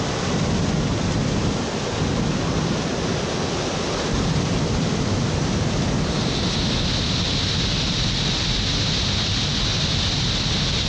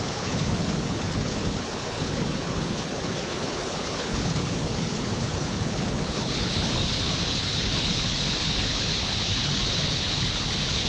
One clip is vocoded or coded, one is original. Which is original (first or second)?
first